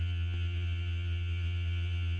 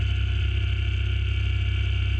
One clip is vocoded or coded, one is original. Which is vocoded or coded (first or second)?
first